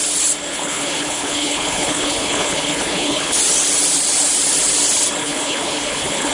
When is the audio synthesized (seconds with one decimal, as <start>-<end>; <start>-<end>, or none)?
0.5-3.4; 5.2-6.3